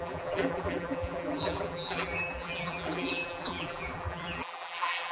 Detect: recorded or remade remade